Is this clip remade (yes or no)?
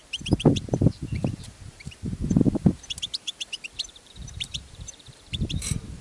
yes